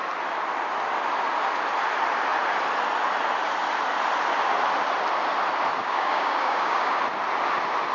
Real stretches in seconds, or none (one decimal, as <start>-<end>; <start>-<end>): 0.0-5.8; 7.0-7.9